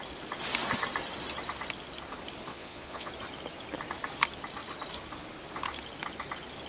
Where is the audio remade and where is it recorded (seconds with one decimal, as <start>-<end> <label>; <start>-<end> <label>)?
0.0-2.5 recorded; 2.5-3.1 remade; 3.1-6.7 recorded